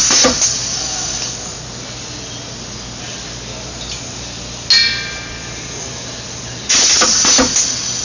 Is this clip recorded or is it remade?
recorded